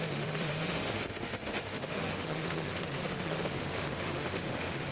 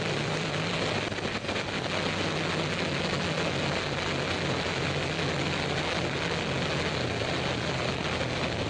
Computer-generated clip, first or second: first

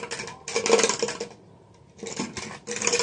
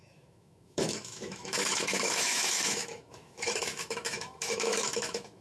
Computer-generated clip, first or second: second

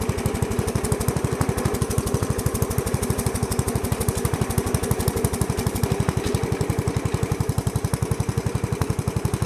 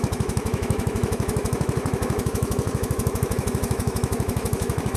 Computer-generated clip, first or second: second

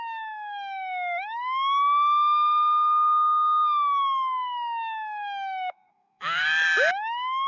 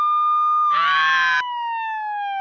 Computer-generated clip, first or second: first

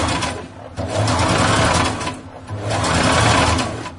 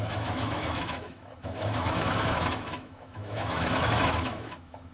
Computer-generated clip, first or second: second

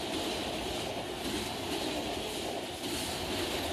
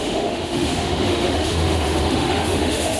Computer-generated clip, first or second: second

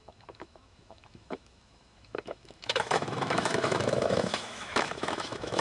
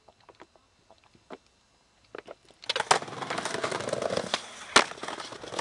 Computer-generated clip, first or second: first